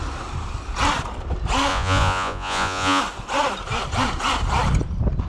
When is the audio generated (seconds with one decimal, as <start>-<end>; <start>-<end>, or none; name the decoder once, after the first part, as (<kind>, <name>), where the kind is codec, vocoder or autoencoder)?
1.7-3.0 (vocoder, Vocos)